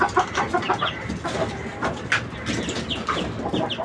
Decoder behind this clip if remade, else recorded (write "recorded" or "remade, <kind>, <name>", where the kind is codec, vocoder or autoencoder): recorded